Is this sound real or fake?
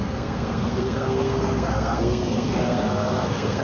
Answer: fake